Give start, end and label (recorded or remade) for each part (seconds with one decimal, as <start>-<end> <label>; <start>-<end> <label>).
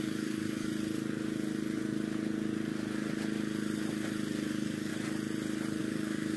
0.0-0.7 remade; 0.7-4.5 recorded; 4.5-4.9 remade; 4.9-5.8 recorded; 5.8-6.4 remade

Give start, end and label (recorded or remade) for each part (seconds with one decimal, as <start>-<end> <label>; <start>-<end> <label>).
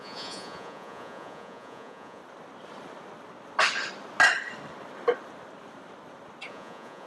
0.0-2.2 remade; 2.2-6.5 recorded; 6.5-7.1 remade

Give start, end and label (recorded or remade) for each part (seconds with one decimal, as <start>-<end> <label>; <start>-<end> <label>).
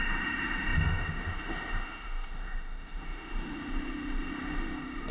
0.0-5.1 remade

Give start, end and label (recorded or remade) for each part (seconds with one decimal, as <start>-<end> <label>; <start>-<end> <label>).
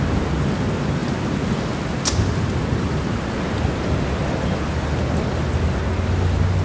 0.0-6.6 recorded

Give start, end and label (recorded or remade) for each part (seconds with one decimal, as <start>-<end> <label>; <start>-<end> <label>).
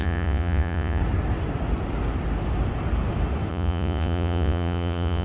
0.0-1.0 remade; 1.0-3.5 recorded; 3.5-5.2 remade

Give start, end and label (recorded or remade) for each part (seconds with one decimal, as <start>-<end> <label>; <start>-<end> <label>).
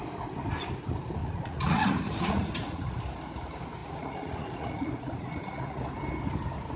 0.0-1.2 recorded; 1.2-3.0 remade; 3.0-3.8 recorded; 3.8-5.9 remade; 5.9-6.8 recorded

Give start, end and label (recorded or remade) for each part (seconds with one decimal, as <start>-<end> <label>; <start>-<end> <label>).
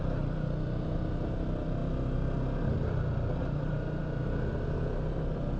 0.0-5.6 recorded